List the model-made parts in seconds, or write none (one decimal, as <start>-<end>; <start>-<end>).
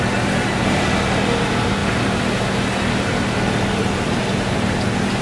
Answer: none